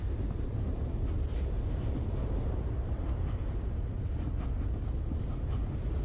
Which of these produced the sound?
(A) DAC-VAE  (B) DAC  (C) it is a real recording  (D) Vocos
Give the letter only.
C